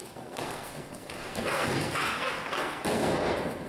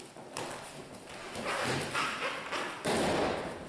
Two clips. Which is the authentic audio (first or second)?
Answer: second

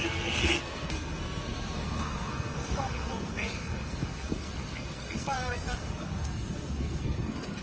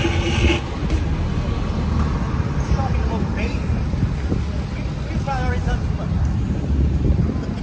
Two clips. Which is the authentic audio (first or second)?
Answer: second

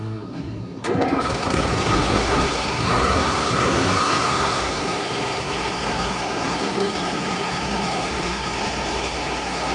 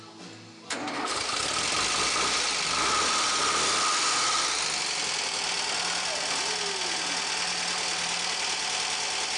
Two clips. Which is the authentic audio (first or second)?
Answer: second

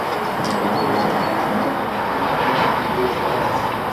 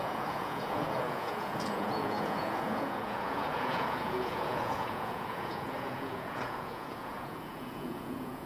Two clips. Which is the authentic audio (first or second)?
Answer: first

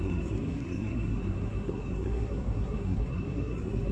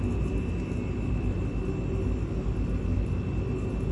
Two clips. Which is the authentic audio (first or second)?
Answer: second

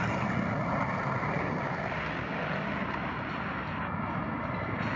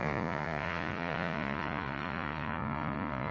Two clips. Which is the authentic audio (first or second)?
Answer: first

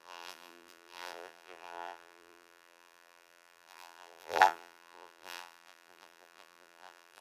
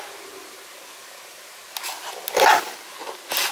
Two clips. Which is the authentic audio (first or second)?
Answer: second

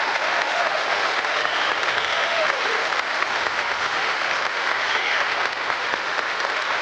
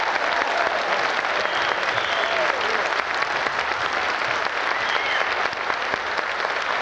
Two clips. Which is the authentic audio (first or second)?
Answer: second